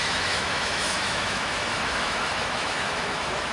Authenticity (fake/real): fake